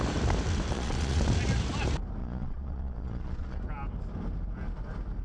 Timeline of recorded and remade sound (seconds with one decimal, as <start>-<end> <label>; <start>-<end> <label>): 0.0-0.7 recorded; 0.7-1.2 remade; 1.2-2.2 recorded; 2.2-3.6 remade; 3.6-5.2 recorded